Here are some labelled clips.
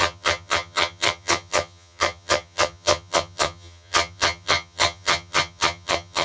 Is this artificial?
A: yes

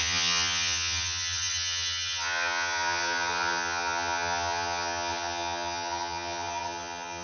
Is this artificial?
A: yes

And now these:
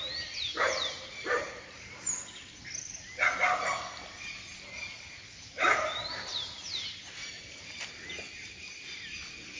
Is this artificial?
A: no